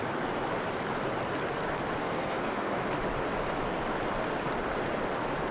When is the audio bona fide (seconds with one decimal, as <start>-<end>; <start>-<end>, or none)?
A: 0.0-2.0; 2.8-5.5